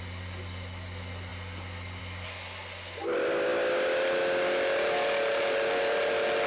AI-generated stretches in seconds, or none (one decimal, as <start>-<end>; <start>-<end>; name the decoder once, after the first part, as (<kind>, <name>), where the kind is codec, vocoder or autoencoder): none